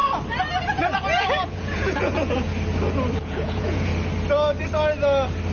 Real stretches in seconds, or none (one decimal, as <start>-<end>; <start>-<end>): 0.0-0.6; 2.5-3.2; 3.9-5.5